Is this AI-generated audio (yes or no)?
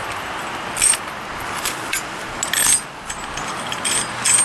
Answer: no